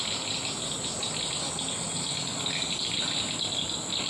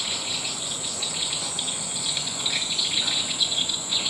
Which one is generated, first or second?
second